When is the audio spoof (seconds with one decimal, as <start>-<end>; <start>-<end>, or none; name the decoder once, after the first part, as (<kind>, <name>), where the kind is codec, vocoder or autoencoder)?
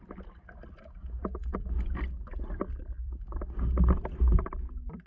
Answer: none